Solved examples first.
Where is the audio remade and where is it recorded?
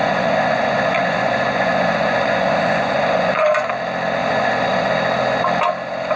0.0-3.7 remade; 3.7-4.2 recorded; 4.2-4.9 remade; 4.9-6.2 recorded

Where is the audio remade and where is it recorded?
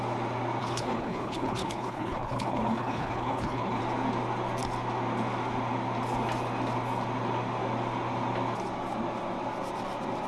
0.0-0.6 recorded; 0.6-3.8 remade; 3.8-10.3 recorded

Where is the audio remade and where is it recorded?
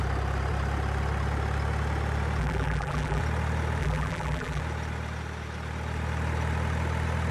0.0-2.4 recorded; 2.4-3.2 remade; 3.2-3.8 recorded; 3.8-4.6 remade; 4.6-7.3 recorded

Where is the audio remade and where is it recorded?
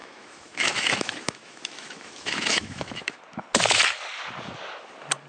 0.0-3.2 remade; 3.2-5.3 recorded